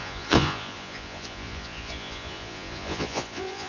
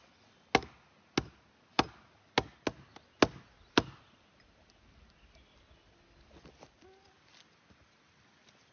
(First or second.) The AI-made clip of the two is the first